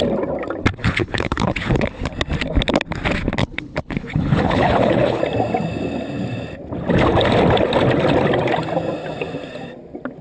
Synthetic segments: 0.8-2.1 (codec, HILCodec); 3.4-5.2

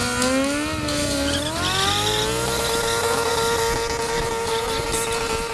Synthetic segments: none

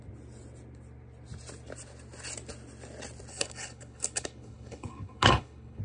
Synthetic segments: 3.3-5.8 (codec, HILCodec)

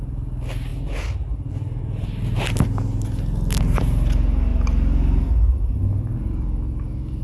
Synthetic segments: none

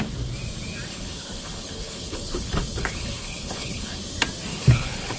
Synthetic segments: 0.9-4.0 (codec, HILCodec); 4.5-5.2